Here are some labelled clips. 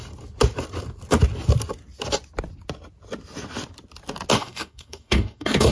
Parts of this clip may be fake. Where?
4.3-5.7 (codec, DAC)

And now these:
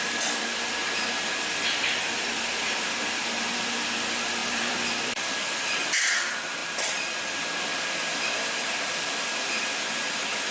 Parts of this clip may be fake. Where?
4.4-5.9 (vocoder, BigVGAN v2); 6.6-7.4

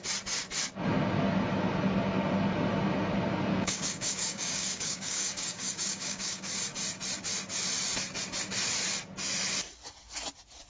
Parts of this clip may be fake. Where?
3.5-6.5 (codec, DAC)

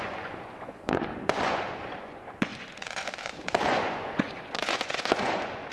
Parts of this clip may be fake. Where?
0.0-5.7 (vocoder, Vocos)

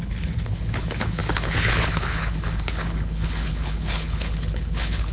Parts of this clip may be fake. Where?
0.0-5.1 (codec, HILCodec)

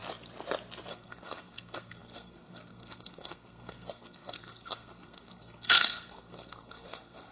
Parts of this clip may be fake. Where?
0.9-7.3 (codec, SNAC)

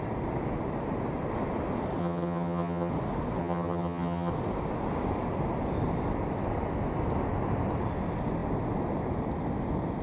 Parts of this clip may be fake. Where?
2.0-2.9 (vocoder, HiFi-GAN); 3.4-4.3

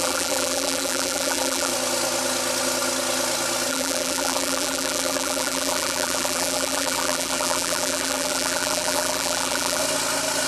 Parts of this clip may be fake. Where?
0.0-1.7 (vocoder, BigVGAN v2); 3.7-9.8